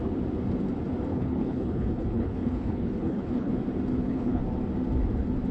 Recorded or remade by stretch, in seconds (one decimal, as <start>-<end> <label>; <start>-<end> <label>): 0.0-1.1 recorded; 1.1-3.5 remade; 3.5-3.9 recorded; 3.9-4.4 remade; 4.4-5.5 recorded